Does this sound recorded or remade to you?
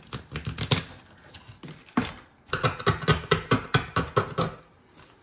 recorded